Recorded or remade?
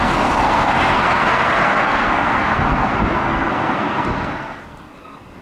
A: remade